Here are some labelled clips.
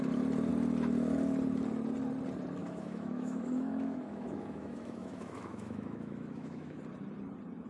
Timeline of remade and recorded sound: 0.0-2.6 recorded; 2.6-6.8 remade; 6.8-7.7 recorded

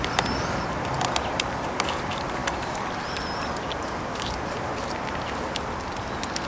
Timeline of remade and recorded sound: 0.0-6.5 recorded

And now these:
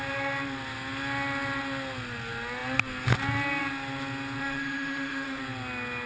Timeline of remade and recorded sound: 0.0-4.4 recorded; 4.4-5.4 remade; 5.4-6.1 recorded

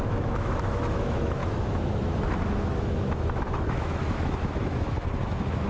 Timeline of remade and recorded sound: 0.0-5.7 remade